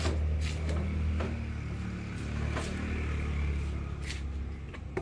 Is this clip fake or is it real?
real